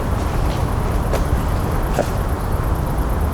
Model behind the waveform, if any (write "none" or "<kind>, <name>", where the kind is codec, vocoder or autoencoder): none